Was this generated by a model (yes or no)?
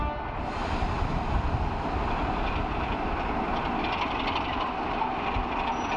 no